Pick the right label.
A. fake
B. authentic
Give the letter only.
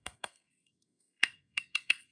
A